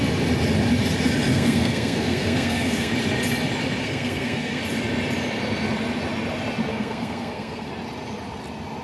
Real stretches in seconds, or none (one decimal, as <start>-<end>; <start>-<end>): 0.0-1.3; 2.9-3.8; 4.6-6.7; 7.7-8.8